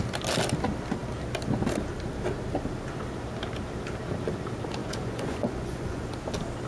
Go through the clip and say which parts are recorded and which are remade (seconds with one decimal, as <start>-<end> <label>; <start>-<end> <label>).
0.0-4.8 recorded; 4.8-6.0 remade; 6.0-6.7 recorded